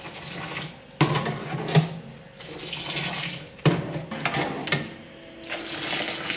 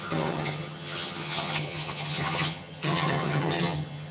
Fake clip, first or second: second